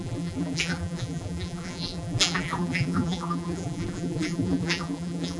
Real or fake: fake